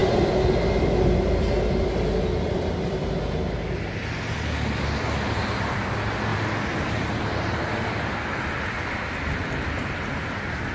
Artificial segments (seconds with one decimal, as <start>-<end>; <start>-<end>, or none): none